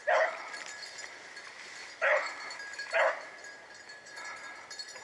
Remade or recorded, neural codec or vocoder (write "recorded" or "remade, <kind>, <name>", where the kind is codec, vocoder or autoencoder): recorded